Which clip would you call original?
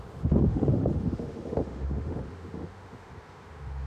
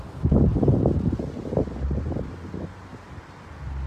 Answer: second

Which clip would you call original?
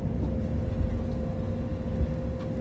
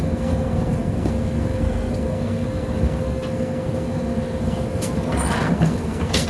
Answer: first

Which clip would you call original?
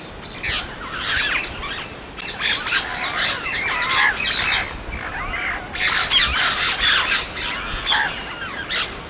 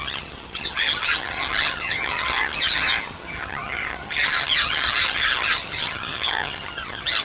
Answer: first